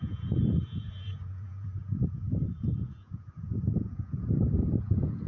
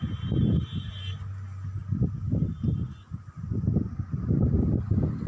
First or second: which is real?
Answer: second